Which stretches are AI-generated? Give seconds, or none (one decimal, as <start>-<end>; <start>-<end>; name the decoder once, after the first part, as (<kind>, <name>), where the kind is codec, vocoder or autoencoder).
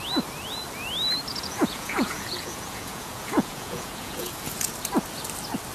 1.3-4.7 (vocoder, Vocos)